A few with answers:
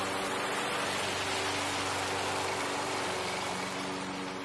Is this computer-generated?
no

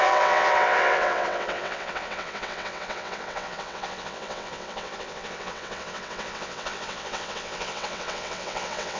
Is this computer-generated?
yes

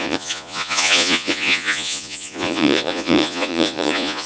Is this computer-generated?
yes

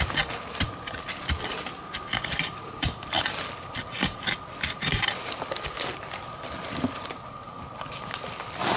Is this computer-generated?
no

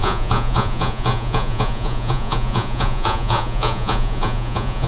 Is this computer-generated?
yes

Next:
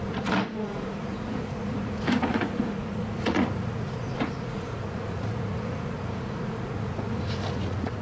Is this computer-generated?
yes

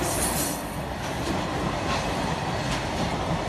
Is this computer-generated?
no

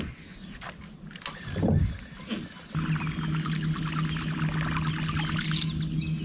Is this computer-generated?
no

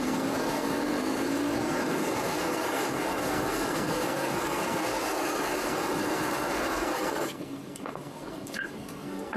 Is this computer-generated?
yes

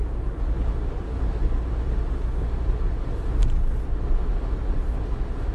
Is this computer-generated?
no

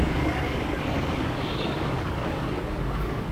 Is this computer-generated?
yes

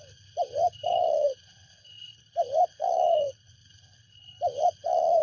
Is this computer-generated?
yes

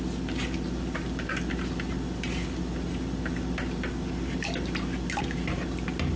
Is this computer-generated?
no